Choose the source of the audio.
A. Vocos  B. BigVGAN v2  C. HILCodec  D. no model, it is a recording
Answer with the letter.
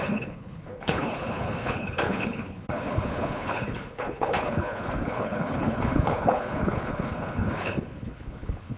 C